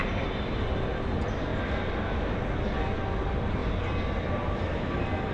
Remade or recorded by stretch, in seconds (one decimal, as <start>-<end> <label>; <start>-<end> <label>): 0.0-0.7 remade; 0.7-5.3 recorded